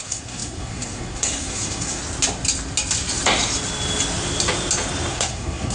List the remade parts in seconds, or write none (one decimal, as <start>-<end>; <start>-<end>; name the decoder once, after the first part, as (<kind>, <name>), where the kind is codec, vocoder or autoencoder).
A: 0.0-2.0 (codec, SNAC); 5.1-5.7

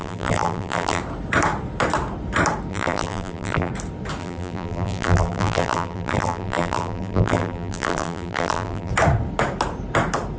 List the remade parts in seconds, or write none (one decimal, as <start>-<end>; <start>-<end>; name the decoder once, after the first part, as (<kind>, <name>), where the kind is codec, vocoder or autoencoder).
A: 0.0-1.0 (vocoder, BigVGAN v2); 2.7-3.7; 4.2-8.9

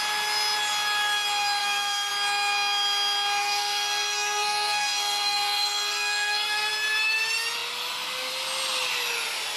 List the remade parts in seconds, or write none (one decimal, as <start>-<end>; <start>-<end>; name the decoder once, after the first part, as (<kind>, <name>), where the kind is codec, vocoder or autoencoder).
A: 1.6-2.1 (codec, SNAC); 3.4-6.7

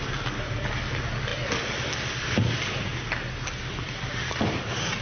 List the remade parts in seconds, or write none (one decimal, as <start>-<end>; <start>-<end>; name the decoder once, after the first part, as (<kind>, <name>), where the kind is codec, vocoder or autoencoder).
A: none